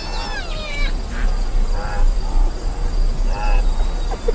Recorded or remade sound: recorded